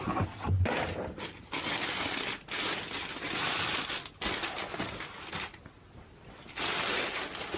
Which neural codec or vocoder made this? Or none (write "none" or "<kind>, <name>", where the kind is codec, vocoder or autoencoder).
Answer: none